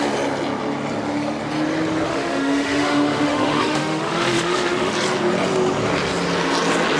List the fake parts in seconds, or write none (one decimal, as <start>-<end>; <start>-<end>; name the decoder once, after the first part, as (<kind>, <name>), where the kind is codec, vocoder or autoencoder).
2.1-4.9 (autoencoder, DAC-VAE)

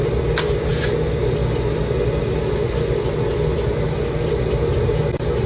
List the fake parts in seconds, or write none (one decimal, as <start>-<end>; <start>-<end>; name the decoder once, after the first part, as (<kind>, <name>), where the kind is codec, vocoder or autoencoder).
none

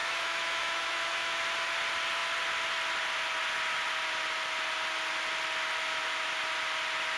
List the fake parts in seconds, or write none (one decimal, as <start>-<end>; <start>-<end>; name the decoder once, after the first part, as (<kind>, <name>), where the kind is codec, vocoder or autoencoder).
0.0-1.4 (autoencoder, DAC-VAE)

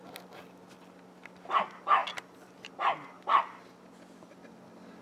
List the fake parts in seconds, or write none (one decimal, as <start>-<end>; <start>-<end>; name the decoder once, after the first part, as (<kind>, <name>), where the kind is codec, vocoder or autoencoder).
none

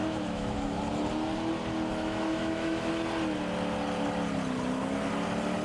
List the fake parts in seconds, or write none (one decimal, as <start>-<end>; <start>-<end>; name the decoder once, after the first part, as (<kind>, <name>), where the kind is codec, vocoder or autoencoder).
0.0-0.8 (autoencoder, DAC-VAE); 1.9-2.9